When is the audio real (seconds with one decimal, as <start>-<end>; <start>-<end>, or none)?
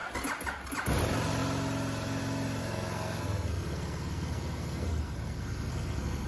0.0-2.6